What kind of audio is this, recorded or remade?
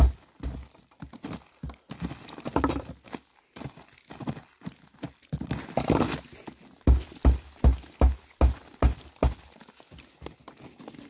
recorded